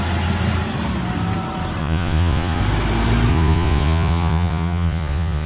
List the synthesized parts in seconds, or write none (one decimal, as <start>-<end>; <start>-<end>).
1.8-2.6; 3.3-5.5